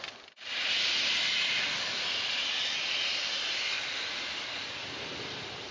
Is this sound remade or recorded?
recorded